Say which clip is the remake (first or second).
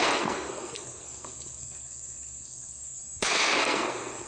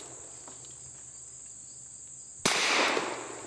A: first